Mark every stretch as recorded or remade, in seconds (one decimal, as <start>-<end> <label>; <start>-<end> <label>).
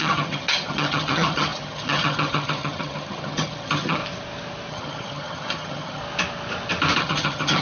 0.0-4.0 remade; 4.0-4.7 recorded; 4.7-6.0 remade; 6.0-7.0 recorded; 7.0-7.6 remade